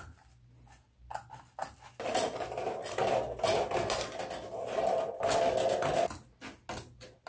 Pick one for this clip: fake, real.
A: real